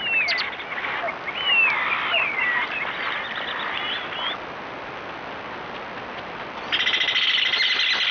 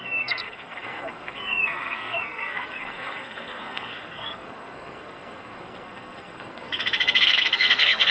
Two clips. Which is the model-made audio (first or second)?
second